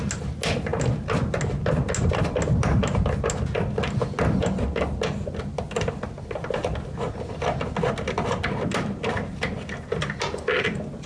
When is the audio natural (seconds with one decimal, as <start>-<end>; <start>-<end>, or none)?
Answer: 0.0-11.1